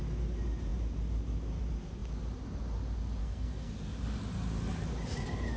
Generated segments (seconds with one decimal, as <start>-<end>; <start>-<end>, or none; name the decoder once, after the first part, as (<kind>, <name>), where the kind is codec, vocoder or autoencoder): 3.2-3.7 (codec, SNAC)